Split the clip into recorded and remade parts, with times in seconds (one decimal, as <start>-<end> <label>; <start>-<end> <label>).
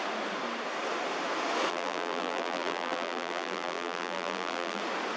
0.0-1.7 recorded; 1.7-4.8 remade; 4.8-5.2 recorded